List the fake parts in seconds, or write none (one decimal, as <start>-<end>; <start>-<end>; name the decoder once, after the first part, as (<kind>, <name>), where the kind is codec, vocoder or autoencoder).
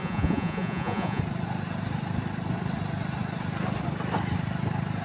0.0-1.2 (vocoder, Vocos)